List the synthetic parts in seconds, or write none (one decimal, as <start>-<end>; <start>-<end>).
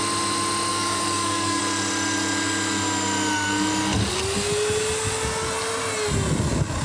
0.7-1.6